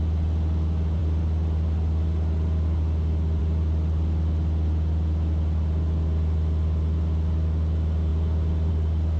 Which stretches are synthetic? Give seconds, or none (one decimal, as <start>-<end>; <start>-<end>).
none